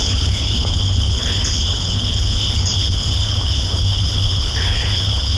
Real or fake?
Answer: fake